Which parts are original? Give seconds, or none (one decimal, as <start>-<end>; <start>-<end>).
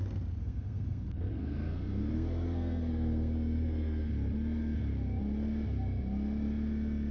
0.0-0.4; 4.1-7.1